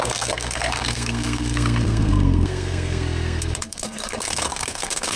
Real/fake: fake